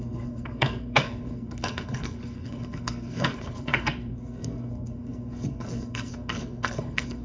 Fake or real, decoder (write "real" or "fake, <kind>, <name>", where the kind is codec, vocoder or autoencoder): fake, codec, SNAC